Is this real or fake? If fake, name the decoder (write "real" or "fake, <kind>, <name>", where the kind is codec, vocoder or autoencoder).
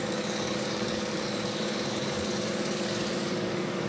fake, codec, DAC